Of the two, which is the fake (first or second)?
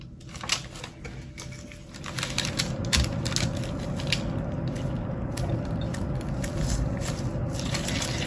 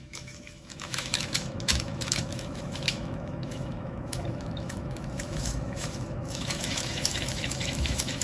second